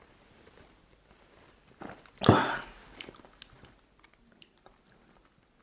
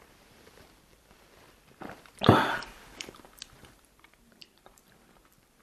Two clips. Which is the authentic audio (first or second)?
first